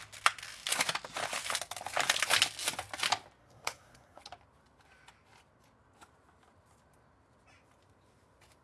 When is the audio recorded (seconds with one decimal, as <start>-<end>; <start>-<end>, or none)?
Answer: 0.0-3.4; 4.2-8.6